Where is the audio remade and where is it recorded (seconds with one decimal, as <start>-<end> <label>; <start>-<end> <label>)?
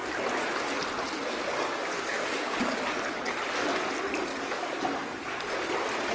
0.0-1.5 recorded; 1.5-2.8 remade; 2.8-4.3 recorded; 4.3-4.8 remade; 4.8-6.1 recorded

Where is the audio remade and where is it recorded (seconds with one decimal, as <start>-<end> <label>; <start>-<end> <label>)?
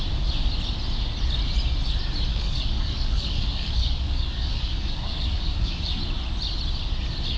0.0-2.3 recorded; 2.3-5.8 remade; 5.8-7.4 recorded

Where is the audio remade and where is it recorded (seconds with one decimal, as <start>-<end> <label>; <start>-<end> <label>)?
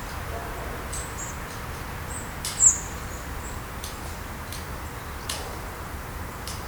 0.0-6.7 recorded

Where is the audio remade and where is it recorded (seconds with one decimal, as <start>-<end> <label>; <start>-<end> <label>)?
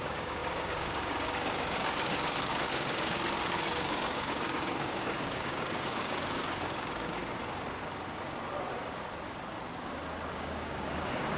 0.0-7.2 remade; 7.2-10.3 recorded; 10.3-11.4 remade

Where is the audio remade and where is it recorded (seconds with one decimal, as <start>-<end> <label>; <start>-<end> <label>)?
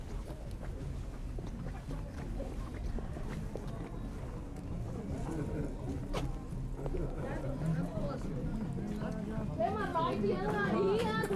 0.0-7.7 recorded; 7.7-8.3 remade; 8.3-11.4 recorded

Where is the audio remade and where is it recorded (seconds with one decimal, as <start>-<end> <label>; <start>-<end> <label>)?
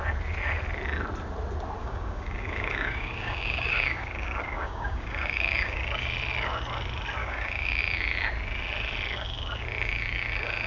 0.0-1.8 recorded; 1.8-5.8 remade; 5.8-7.2 recorded; 7.2-7.8 remade; 7.8-10.7 recorded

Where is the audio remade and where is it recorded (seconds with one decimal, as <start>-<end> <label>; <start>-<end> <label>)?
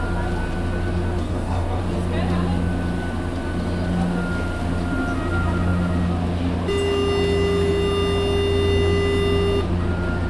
0.0-1.2 recorded; 1.2-1.8 remade; 1.8-10.3 recorded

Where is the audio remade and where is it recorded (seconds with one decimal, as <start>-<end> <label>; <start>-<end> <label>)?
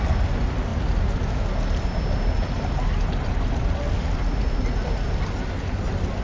0.0-6.2 recorded